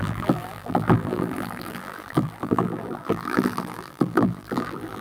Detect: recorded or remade remade